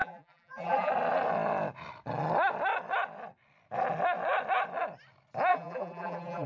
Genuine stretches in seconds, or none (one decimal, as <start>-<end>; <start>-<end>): 0.9-5.5